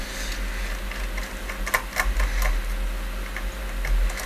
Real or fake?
real